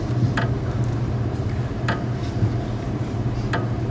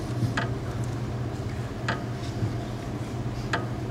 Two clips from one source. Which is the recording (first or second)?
second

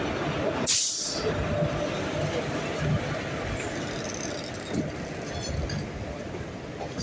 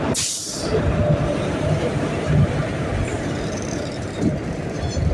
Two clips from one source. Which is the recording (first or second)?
first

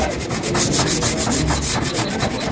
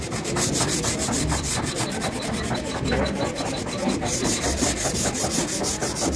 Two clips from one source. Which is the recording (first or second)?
first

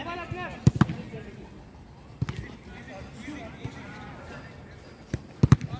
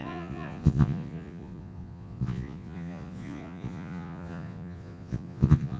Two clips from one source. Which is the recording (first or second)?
first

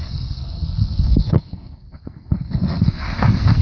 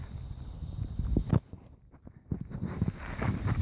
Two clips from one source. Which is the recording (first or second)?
second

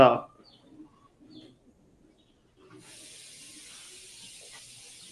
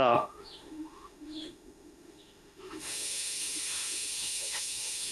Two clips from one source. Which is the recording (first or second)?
first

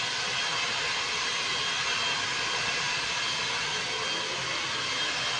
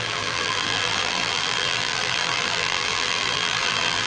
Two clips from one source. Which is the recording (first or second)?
first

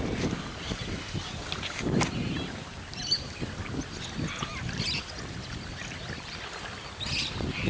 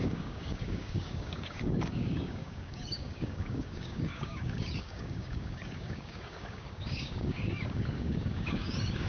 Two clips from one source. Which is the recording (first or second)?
first